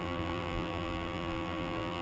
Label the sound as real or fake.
fake